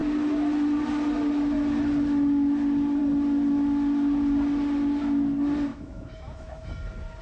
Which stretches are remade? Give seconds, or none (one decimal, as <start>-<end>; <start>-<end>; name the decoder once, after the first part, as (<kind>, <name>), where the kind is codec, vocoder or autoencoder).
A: 5.7-6.7 (autoencoder, DAC-VAE)